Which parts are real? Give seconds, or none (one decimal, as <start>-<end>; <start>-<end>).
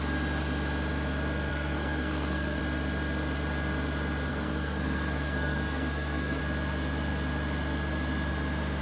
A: 0.0-1.5; 2.6-4.3; 6.4-8.8